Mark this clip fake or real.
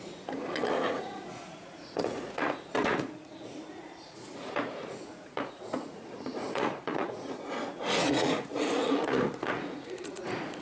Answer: fake